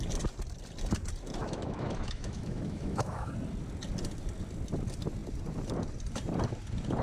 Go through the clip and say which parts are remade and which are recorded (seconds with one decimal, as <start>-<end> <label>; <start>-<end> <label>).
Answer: 0.0-1.4 recorded; 1.4-3.3 remade; 3.3-7.0 recorded